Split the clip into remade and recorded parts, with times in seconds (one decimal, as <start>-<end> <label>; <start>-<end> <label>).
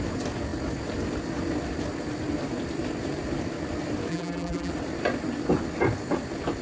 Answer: 0.0-4.1 recorded; 4.1-4.7 remade; 4.7-6.6 recorded